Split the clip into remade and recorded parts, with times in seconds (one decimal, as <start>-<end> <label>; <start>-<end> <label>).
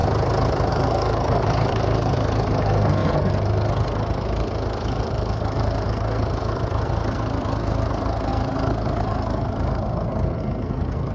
0.0-0.7 recorded; 0.7-11.1 remade